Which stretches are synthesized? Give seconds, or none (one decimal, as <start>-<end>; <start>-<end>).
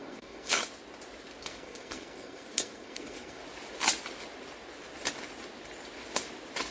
0.0-0.6; 1.4-3.4